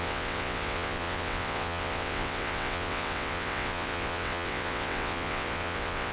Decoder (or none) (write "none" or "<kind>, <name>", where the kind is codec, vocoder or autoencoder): vocoder, WaveNeXt